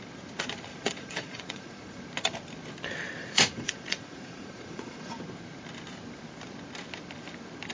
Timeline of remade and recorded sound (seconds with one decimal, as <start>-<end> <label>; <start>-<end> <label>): 0.0-0.7 recorded; 0.7-2.0 remade; 2.0-3.2 recorded; 3.2-5.2 remade; 5.2-7.7 recorded